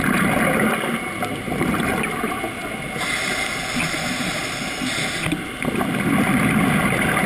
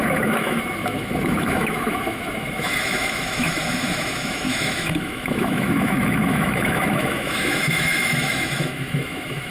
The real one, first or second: first